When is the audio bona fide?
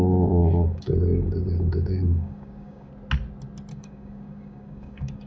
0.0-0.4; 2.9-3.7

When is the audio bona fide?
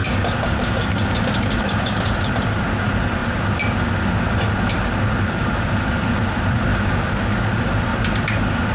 2.3-6.7; 7.4-8.7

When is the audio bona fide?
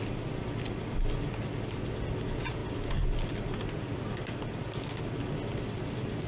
0.0-6.3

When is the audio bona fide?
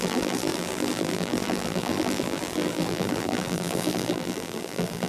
none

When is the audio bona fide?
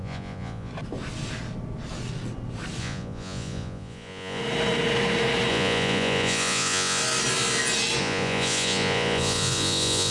0.7-2.8; 4.4-5.5; 7.0-8.0